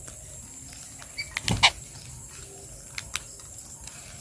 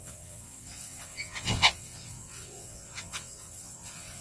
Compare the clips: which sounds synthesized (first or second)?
second